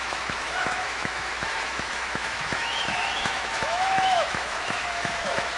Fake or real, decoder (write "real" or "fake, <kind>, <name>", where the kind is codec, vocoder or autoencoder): fake, autoencoder, DAC-VAE